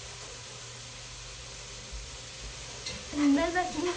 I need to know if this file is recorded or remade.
recorded